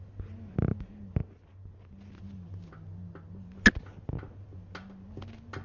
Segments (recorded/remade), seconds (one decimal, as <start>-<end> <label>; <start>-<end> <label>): 0.0-5.6 recorded